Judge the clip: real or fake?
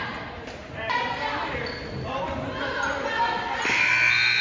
real